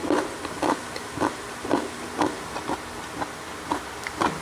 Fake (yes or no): no